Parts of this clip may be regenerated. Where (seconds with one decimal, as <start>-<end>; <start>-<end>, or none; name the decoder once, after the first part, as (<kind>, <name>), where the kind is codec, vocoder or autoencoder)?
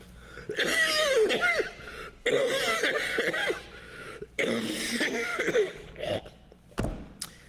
3.4-4.6 (autoencoder, DAC-VAE)